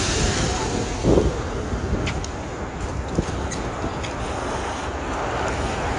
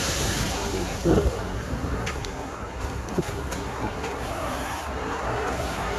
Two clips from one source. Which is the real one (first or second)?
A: first